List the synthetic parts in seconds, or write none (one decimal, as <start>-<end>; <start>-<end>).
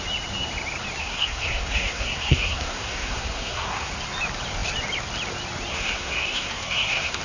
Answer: 1.0-3.9; 5.7-7.2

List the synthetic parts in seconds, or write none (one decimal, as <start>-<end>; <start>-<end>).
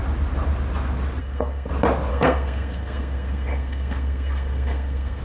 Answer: 1.2-1.7; 2.1-5.2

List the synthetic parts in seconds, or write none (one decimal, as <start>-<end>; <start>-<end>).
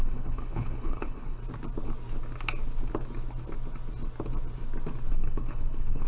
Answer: 0.0-1.4; 5.1-6.1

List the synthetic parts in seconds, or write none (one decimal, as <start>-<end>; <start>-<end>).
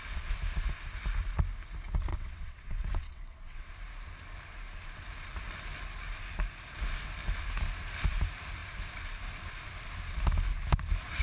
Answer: 2.1-3.7